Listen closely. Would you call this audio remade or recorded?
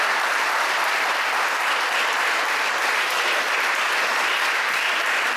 remade